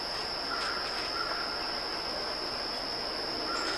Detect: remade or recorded remade